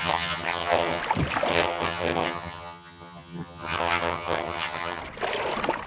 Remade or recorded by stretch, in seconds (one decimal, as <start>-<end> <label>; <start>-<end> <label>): 0.0-1.0 remade; 1.0-1.5 recorded; 1.5-5.0 remade; 5.0-5.9 recorded